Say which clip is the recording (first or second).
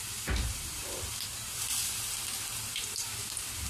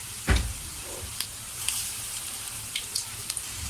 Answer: first